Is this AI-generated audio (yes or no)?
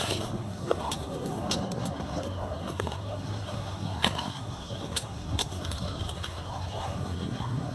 yes